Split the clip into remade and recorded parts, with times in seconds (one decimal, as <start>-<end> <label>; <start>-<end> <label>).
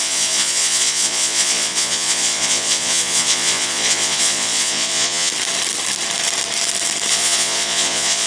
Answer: 0.0-5.3 remade; 5.3-7.1 recorded; 7.1-8.3 remade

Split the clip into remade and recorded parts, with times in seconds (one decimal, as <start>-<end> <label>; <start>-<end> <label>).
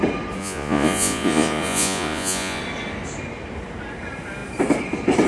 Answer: 0.0-0.4 recorded; 0.4-2.6 remade; 2.6-5.3 recorded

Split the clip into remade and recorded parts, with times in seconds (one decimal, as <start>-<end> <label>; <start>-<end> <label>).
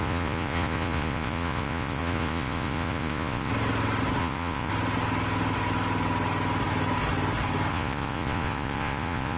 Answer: 0.0-3.5 remade; 3.5-4.2 recorded; 4.2-4.7 remade; 4.7-7.7 recorded; 7.7-9.4 remade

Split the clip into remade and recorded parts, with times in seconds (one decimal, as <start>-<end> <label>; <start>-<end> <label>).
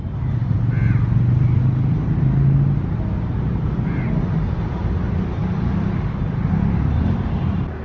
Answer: 0.0-7.8 recorded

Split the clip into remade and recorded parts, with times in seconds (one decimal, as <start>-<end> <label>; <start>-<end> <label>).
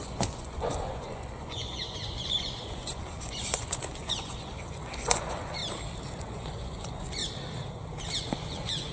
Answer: 0.0-5.6 remade; 5.6-6.1 recorded; 6.1-7.2 remade; 7.2-8.2 recorded; 8.2-8.9 remade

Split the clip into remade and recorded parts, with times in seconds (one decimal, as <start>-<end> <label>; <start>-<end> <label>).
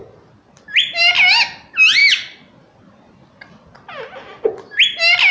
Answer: 0.0-5.3 recorded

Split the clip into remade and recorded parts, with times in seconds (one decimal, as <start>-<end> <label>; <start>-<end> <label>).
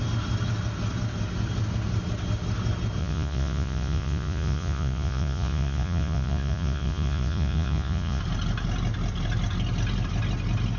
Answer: 0.0-3.0 recorded; 3.0-8.2 remade; 8.2-10.8 recorded